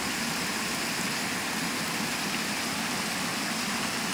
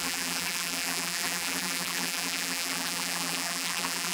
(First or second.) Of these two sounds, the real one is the first